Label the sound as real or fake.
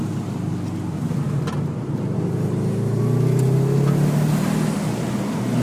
real